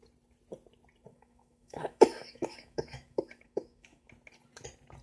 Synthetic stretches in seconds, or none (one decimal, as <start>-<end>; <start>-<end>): 1.1-4.1